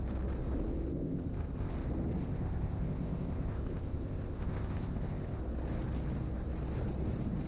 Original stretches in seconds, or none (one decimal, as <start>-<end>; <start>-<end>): 0.0-0.9; 1.7-2.2; 5.4-7.5